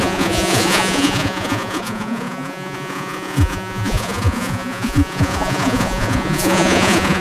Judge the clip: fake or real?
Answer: fake